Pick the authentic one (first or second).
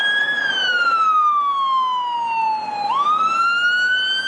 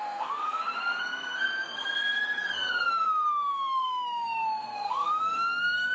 first